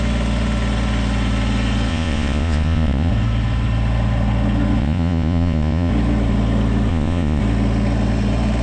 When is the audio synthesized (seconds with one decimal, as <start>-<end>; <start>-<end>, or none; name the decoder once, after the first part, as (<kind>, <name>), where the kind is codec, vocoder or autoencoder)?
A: 1.9-3.1 (vocoder, Vocos); 4.8-5.9; 6.9-7.4